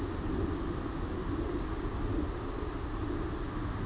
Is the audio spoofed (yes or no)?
no